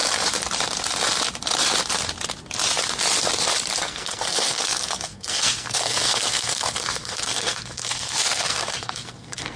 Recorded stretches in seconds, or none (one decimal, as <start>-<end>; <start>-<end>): 0.0-3.8